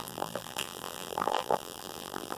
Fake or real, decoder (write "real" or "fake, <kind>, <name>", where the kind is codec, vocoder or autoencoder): fake, vocoder, BigVGAN v2